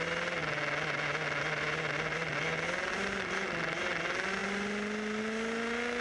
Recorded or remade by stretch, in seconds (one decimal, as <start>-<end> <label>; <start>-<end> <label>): 0.0-6.0 recorded